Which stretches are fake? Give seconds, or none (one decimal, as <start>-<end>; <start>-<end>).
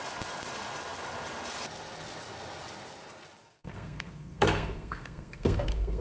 3.4-6.0